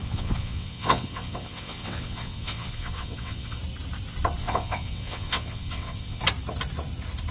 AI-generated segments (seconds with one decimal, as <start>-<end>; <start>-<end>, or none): 0.0-3.6; 4.4-6.2